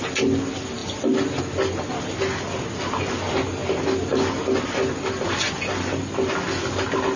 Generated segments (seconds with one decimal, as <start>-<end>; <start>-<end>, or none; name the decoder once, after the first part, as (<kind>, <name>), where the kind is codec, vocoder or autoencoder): none